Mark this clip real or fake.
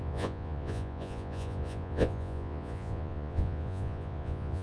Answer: fake